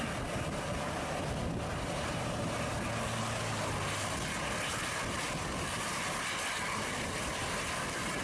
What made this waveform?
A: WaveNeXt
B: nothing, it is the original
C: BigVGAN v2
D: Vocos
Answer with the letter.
B